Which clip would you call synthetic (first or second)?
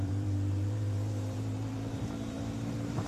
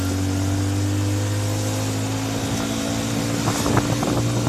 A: first